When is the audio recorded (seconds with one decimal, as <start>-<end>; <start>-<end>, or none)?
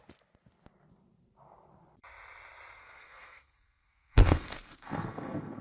0.0-2.8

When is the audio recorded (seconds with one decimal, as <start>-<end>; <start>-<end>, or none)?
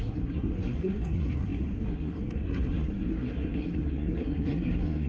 none